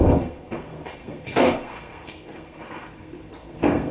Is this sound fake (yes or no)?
yes